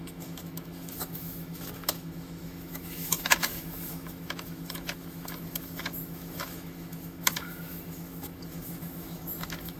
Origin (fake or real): fake